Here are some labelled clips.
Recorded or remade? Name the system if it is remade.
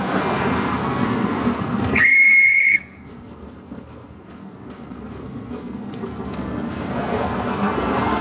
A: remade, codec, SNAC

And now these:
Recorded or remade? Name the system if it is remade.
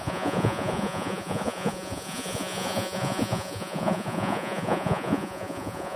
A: remade, vocoder, Vocos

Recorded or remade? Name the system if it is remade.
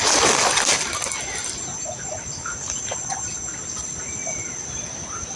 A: recorded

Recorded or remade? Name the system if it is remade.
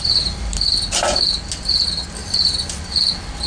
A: recorded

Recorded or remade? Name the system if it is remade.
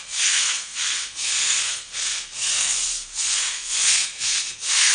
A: remade, codec, SNAC